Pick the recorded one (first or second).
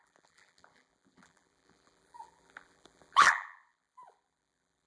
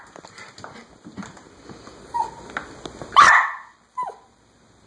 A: second